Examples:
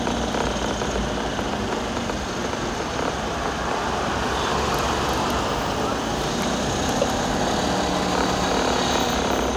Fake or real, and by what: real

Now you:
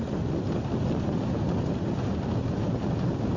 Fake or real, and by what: real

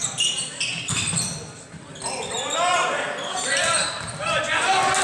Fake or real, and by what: real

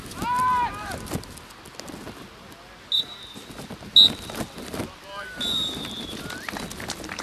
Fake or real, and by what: real